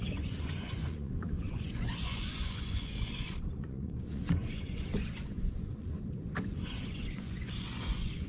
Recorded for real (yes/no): no